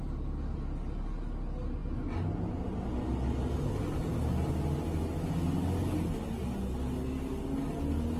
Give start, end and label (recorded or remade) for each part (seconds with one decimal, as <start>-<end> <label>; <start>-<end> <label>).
0.0-8.2 recorded